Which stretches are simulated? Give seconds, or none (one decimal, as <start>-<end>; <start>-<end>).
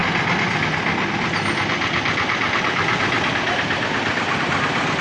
2.6-5.0